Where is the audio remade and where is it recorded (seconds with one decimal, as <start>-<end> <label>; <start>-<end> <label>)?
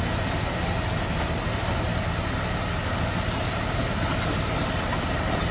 0.0-1.9 remade; 1.9-2.9 recorded; 2.9-3.8 remade; 3.8-4.7 recorded; 4.7-5.5 remade